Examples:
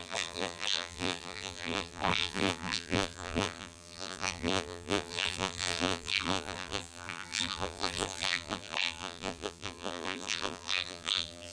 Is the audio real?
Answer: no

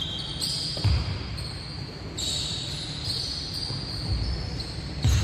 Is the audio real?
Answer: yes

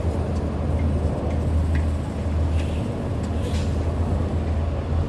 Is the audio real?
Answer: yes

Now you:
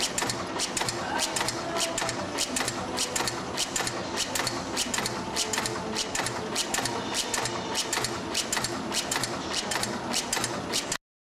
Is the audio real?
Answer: yes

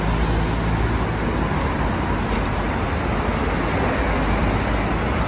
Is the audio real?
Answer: yes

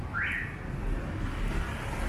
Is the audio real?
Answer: yes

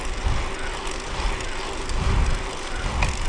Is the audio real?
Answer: yes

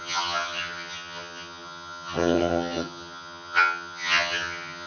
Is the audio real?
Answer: no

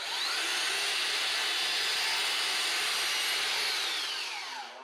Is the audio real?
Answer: yes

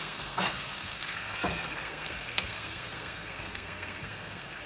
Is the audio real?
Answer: no